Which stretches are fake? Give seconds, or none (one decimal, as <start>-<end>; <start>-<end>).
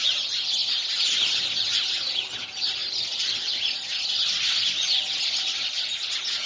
none